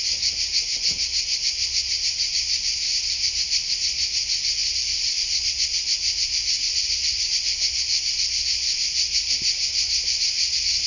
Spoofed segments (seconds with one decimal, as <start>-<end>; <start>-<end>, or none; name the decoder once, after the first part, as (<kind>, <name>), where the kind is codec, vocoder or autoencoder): none